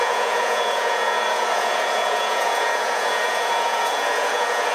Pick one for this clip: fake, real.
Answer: fake